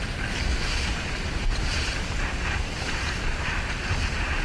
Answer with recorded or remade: remade